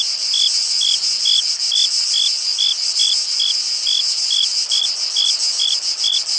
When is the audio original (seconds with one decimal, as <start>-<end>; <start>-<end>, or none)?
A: 0.0-6.4